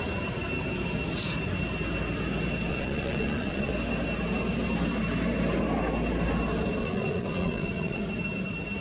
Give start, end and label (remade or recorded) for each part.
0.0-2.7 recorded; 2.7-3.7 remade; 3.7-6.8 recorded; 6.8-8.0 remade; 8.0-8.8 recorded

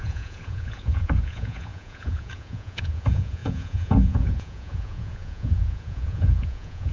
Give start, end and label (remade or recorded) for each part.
0.0-6.9 remade

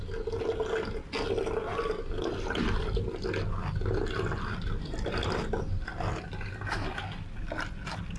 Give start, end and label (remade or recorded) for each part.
0.0-8.2 recorded

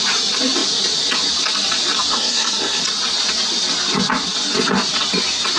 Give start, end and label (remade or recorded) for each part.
0.0-2.1 recorded; 2.1-2.8 remade; 2.8-5.6 recorded

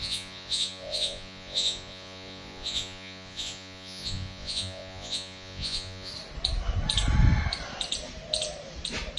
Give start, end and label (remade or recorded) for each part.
0.0-6.1 remade; 6.1-9.2 recorded

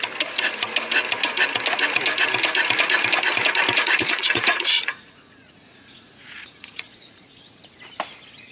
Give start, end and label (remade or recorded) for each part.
0.0-3.7 recorded; 3.7-7.6 remade; 7.6-8.5 recorded